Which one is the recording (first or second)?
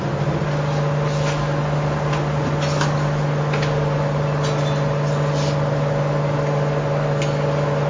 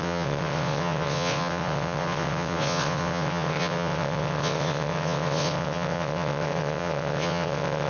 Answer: first